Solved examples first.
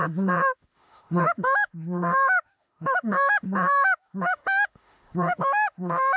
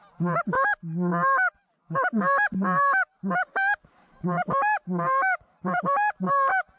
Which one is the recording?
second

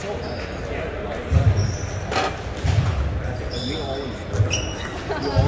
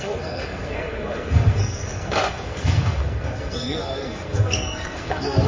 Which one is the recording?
first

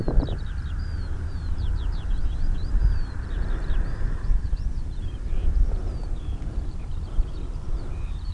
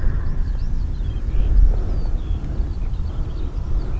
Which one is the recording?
second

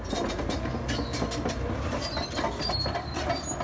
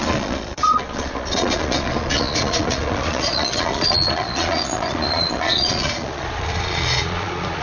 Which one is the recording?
first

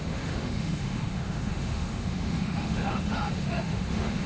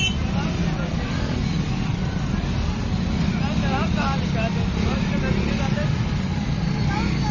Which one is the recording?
second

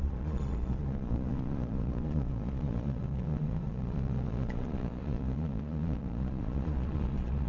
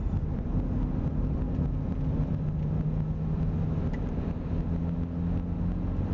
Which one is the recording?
second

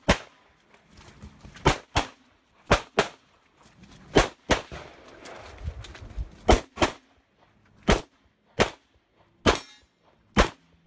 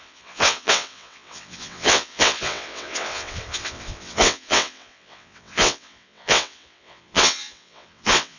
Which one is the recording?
first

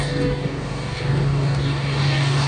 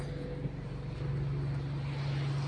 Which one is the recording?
second